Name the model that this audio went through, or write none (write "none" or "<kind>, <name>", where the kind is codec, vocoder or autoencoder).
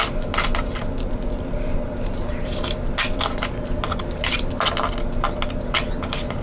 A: none